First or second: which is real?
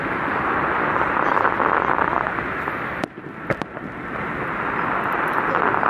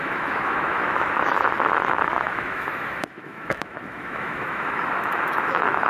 first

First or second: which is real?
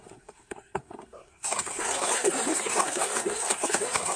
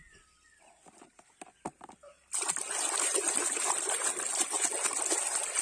second